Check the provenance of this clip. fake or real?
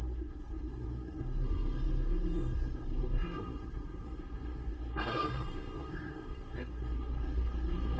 fake